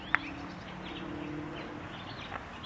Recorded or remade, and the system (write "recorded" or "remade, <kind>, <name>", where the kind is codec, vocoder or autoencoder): recorded